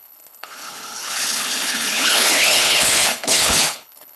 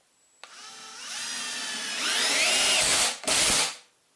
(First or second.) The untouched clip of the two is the second